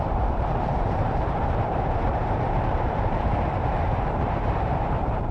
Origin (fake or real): fake